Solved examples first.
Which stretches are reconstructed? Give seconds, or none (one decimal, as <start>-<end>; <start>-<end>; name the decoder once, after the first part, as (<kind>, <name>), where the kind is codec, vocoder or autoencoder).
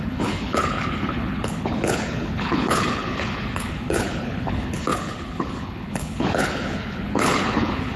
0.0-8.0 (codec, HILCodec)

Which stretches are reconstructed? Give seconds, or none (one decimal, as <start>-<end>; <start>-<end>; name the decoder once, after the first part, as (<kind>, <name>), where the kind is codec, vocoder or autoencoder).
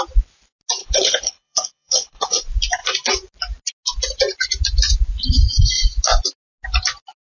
0.8-2.4 (codec, HILCodec)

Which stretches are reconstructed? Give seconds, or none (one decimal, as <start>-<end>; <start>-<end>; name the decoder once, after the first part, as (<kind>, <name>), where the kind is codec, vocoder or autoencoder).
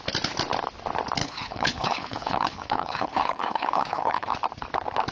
1.2-4.3 (codec, HILCodec)